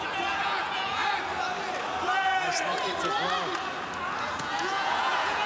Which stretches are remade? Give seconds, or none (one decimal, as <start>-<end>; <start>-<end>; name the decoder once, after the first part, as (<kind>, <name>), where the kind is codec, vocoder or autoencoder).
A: 0.0-1.0 (vocoder, Vocos); 4.3-5.5